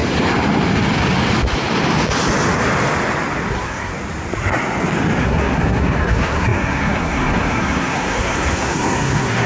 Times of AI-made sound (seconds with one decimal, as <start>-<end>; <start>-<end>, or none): 3.5-3.9; 5.2-9.5